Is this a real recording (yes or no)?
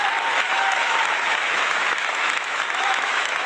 no